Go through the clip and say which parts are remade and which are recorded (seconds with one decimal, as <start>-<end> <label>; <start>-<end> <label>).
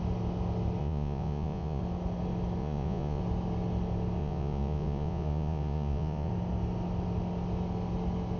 0.0-0.8 recorded; 0.8-1.8 remade; 1.8-2.6 recorded; 2.6-3.2 remade; 3.2-4.2 recorded; 4.2-6.3 remade; 6.3-8.4 recorded